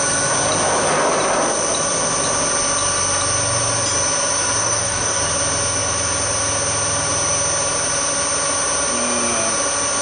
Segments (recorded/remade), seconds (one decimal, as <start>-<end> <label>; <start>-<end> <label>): 0.0-4.6 recorded; 4.6-5.2 remade; 5.2-10.0 recorded